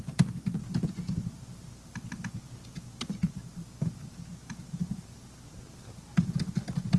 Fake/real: real